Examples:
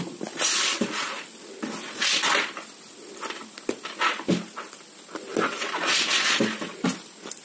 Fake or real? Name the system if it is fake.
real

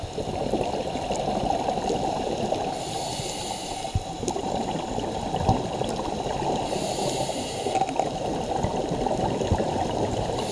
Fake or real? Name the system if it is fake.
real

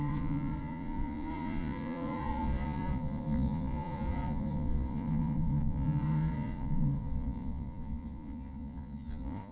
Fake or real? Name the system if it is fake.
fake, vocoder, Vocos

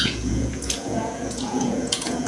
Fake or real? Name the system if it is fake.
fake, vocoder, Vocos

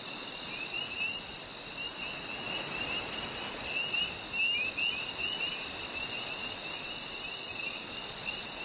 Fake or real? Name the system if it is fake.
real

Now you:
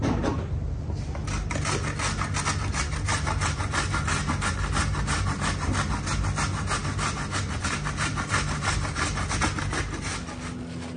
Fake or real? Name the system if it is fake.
real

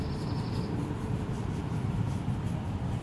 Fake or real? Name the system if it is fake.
real